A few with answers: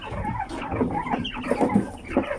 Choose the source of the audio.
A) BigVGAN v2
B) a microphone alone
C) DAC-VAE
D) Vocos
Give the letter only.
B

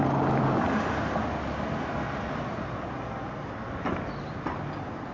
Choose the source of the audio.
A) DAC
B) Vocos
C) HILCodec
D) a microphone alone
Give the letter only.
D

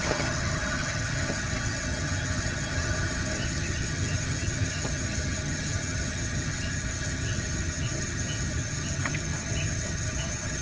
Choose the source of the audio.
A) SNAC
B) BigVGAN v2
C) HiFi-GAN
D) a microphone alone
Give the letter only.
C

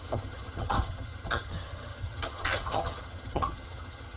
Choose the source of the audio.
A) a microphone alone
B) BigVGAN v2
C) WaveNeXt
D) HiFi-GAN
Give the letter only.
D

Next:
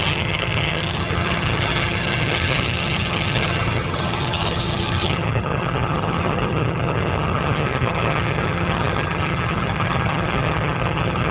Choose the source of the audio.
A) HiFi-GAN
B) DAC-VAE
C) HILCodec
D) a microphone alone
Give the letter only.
A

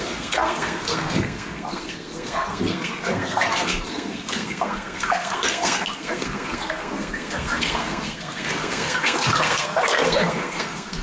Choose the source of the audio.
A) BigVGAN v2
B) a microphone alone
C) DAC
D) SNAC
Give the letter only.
D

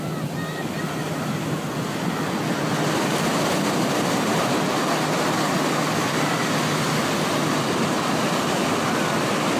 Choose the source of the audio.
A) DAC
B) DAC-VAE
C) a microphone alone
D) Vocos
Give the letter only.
C